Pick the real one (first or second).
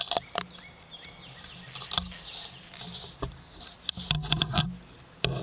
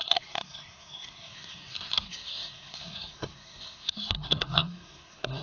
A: first